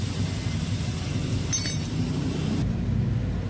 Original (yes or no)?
yes